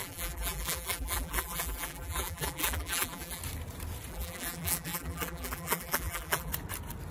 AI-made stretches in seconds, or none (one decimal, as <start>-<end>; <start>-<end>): 0.0-3.4; 4.1-6.5